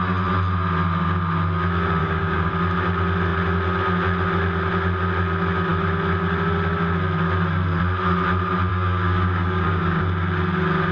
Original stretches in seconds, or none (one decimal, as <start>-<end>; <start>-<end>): 0.0-2.0; 2.5-8.7; 10.0-10.9